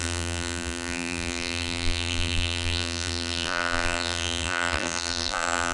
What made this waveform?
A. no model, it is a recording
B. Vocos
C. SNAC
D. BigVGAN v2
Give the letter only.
D